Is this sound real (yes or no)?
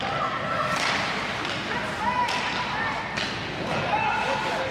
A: yes